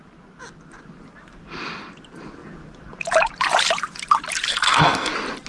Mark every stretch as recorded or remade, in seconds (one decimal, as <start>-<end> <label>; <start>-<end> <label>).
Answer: 0.0-4.5 recorded; 4.5-5.1 remade; 5.1-5.5 recorded